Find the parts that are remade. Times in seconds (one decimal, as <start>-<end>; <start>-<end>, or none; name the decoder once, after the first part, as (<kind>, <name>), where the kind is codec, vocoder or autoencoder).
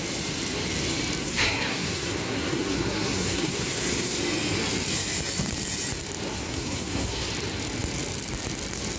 1.2-4.2 (codec, SNAC); 6.3-7.3